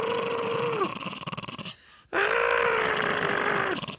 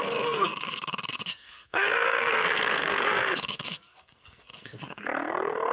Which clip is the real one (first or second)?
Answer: first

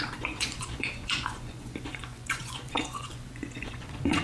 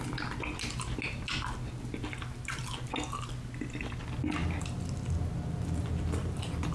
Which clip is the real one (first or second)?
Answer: second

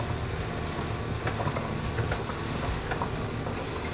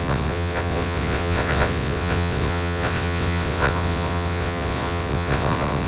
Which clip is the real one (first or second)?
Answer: first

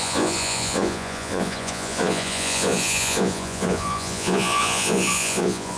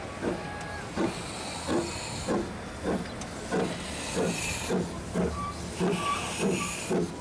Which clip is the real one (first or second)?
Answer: second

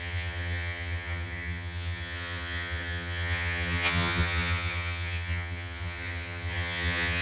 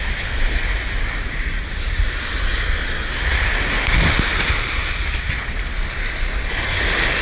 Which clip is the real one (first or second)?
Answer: second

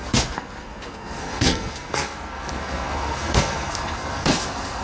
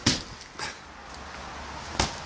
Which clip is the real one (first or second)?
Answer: second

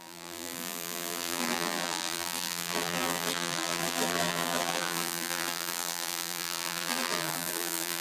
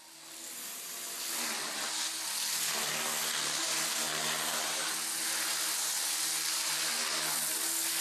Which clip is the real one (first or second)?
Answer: second